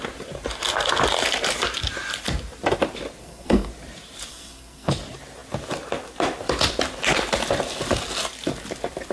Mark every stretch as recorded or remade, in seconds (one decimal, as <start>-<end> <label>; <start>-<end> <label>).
0.0-3.2 recorded; 3.2-3.7 remade; 3.7-4.3 recorded; 4.3-4.9 remade; 4.9-9.1 recorded